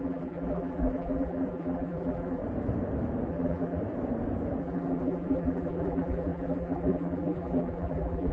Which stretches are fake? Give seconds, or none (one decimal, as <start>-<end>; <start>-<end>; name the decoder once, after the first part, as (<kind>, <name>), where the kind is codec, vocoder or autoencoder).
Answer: 0.0-2.4 (vocoder, BigVGAN v2); 3.3-3.8; 4.6-8.3